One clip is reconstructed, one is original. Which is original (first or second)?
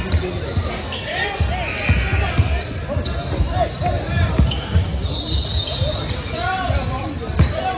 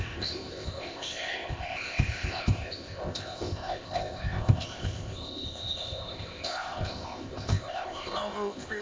first